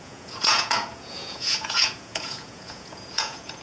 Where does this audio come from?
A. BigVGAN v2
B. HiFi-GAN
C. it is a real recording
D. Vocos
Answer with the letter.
D